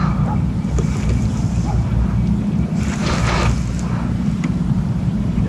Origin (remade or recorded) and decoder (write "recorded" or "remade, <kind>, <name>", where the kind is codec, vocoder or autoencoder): recorded